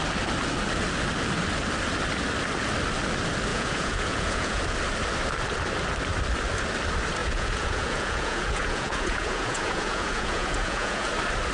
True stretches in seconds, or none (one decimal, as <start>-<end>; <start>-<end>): 0.0-3.5; 4.6-7.2; 11.1-11.5